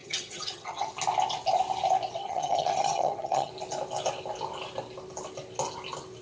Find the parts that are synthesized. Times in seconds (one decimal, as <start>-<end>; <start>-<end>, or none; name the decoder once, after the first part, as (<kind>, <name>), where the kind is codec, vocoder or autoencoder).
0.0-0.9 (vocoder, HiFi-GAN); 2.2-3.5